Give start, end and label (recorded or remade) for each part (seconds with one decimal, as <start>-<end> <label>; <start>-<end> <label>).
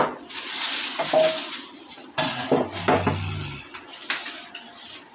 0.0-5.1 recorded